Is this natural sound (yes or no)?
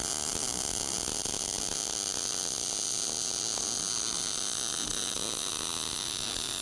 yes